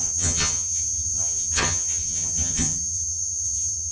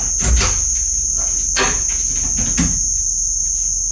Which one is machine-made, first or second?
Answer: first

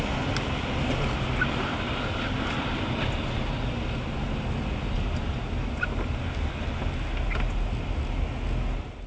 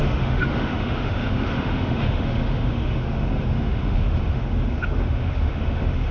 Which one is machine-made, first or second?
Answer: second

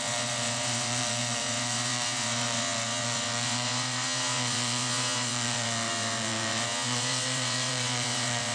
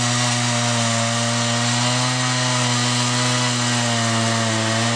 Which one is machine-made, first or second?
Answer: first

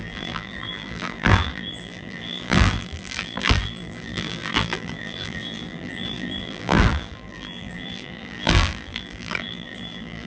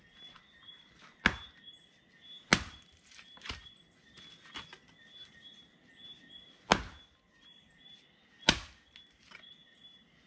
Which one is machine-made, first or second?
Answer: first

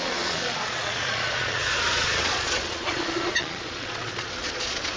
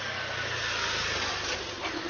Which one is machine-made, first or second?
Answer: first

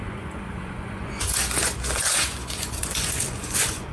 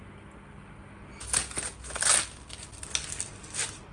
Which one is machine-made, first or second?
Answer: first